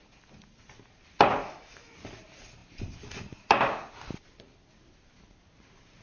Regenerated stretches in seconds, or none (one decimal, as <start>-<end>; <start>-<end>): 1.4-1.9